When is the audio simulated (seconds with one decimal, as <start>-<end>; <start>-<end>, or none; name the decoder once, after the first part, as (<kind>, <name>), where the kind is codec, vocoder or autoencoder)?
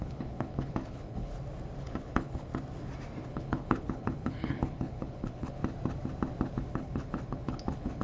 0.0-1.3 (codec, HILCodec); 1.8-2.5; 3.3-5.6; 6.5-8.0